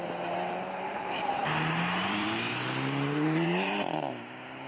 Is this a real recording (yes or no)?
no